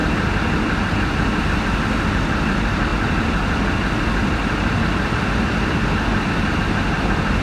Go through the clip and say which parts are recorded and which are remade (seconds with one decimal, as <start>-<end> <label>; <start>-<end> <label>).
0.0-7.4 recorded